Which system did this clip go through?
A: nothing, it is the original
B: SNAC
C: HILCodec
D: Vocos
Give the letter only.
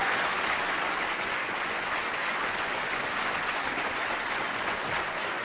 D